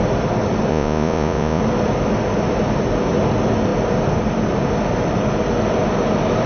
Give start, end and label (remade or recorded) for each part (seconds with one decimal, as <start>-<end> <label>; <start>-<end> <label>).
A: 0.0-0.7 recorded; 0.7-1.6 remade; 1.6-6.5 recorded